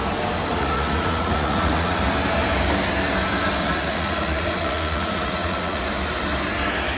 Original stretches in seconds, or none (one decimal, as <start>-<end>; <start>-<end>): 0.0-0.5; 2.0-3.6; 5.8-7.0